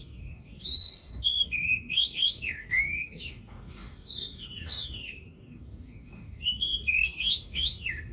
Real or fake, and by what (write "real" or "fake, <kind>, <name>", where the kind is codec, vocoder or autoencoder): fake, codec, DAC